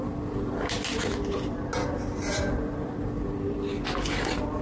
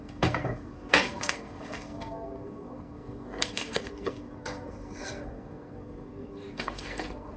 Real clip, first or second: first